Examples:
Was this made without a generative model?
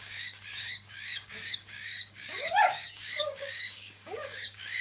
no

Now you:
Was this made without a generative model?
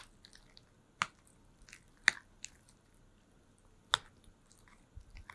yes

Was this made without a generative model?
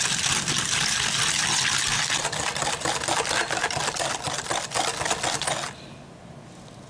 yes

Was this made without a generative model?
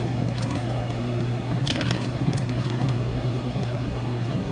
no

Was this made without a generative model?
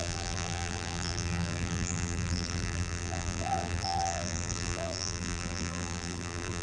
no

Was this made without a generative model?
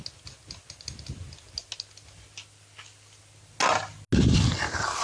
yes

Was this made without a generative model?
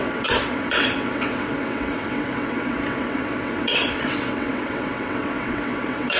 no